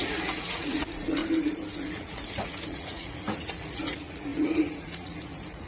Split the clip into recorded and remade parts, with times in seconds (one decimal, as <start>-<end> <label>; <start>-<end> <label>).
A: 0.0-1.2 remade; 1.2-1.9 recorded; 1.9-5.7 remade

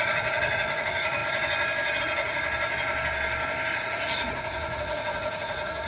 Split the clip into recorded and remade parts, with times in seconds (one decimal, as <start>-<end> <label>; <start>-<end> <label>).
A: 0.0-1.2 remade; 1.2-2.0 recorded; 2.0-2.4 remade; 2.4-3.7 recorded; 3.7-5.9 remade

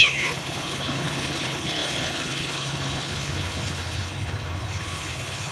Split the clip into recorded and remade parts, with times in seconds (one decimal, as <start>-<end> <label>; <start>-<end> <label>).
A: 0.0-5.5 remade